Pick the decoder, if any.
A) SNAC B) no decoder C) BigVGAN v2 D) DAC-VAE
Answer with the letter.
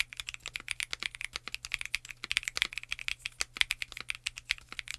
B